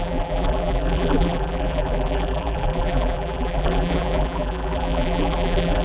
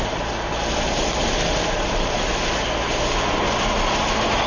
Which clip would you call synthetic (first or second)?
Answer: first